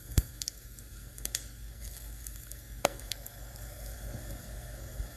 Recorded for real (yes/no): no